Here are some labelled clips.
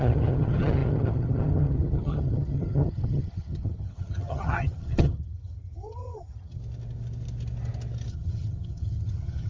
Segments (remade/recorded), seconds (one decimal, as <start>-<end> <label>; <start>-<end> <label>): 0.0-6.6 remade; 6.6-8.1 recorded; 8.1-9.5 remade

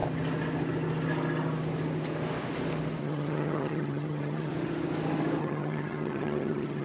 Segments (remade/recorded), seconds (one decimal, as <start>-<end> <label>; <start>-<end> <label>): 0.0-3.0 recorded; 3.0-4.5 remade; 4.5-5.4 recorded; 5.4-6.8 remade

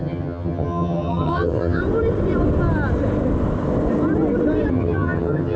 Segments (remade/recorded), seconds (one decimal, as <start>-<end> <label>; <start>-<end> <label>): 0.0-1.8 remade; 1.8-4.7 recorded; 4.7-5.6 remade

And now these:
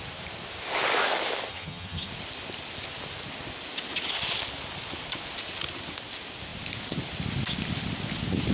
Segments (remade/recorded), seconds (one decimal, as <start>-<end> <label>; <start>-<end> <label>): 0.0-1.5 recorded; 1.5-2.1 remade; 2.1-8.5 recorded

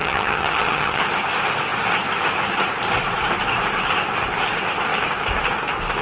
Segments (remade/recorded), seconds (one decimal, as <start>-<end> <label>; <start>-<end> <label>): 0.0-1.0 remade; 1.0-6.0 recorded